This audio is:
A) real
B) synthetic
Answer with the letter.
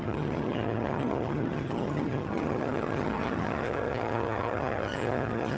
B